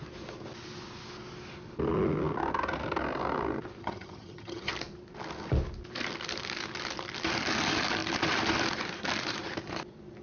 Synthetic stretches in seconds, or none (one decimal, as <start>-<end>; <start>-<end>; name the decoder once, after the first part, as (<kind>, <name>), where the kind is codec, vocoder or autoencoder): 3.8-4.7 (vocoder, HiFi-GAN)